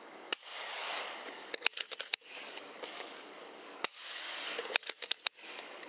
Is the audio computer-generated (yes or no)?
yes